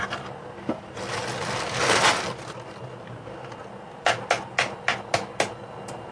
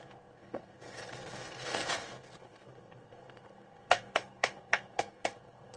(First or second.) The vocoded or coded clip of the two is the second